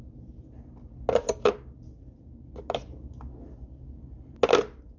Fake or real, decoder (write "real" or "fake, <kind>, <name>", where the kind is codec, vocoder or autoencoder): real